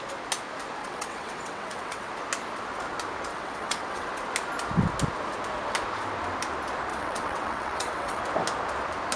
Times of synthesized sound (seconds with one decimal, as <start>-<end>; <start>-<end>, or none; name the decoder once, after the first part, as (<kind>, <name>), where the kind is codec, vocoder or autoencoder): 0.8-2.1 (vocoder, WaveNeXt); 3.3-4.1; 6.9-8.2